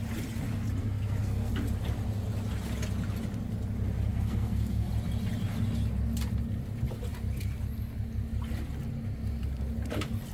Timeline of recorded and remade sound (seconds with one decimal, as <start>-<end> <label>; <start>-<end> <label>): 0.0-0.8 recorded; 0.8-1.5 remade; 1.5-4.1 recorded; 4.1-4.9 remade; 4.9-10.3 recorded